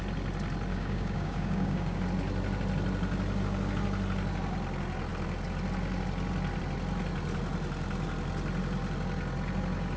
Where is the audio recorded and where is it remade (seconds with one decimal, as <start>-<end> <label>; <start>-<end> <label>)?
0.0-0.7 recorded; 0.7-2.0 remade; 2.0-10.0 recorded